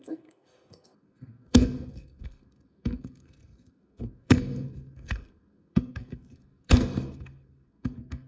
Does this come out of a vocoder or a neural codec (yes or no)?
yes